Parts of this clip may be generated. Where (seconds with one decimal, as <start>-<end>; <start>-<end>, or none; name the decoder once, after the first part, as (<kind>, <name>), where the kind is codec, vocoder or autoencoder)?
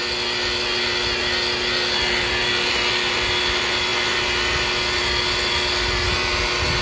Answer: none